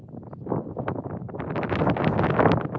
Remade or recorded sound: recorded